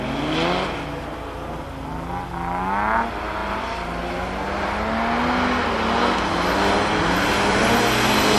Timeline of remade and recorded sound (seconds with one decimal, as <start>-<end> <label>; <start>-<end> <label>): 0.0-8.4 recorded